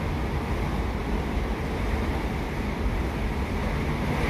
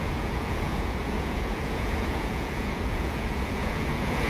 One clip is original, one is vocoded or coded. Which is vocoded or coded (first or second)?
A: second